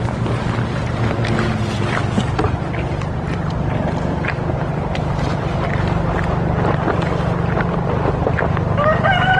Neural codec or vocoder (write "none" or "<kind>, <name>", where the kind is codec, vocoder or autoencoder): none